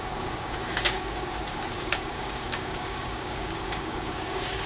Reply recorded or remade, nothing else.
remade